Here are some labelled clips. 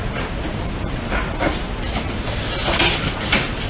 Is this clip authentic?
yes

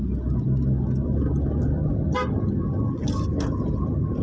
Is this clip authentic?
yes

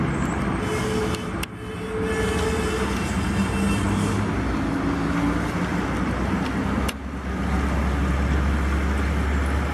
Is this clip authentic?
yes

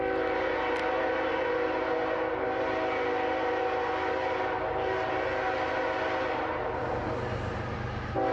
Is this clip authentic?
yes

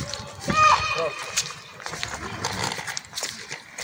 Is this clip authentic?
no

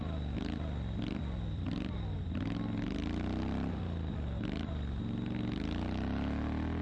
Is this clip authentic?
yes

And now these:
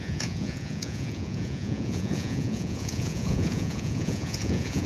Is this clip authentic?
no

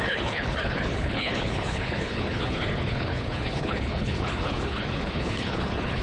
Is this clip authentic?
no